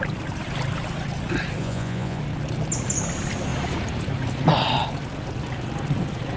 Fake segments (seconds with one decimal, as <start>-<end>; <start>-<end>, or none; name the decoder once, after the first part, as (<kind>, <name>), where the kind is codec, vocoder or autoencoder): 1.6-2.2 (vocoder, Vocos)